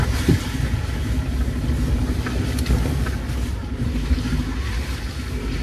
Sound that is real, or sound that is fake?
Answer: real